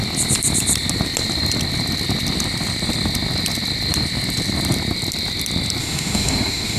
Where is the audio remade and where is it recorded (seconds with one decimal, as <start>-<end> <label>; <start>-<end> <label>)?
0.0-5.8 recorded; 5.8-6.8 remade